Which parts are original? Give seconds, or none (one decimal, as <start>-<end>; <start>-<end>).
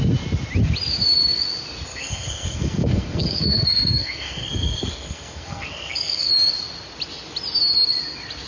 0.0-1.9; 6.3-8.5